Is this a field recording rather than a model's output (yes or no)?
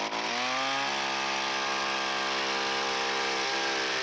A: yes